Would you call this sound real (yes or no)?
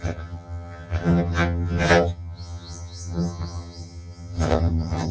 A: no